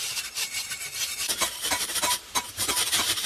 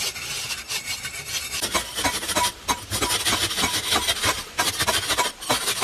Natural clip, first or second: second